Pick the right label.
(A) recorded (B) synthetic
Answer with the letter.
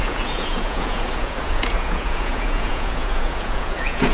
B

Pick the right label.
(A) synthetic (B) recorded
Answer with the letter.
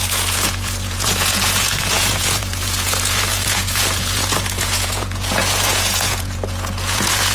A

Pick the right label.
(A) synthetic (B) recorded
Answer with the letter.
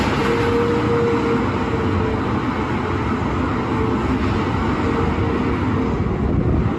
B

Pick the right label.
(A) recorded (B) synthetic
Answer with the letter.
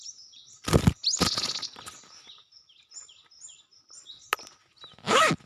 A